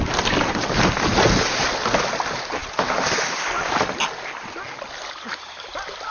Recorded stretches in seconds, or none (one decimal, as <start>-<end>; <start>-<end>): 0.0-6.1